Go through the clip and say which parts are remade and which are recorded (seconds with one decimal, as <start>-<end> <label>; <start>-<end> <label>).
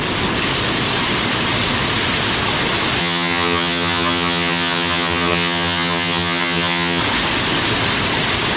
0.0-3.0 recorded; 3.0-7.0 remade; 7.0-8.6 recorded